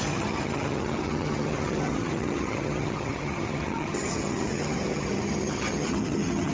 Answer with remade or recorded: remade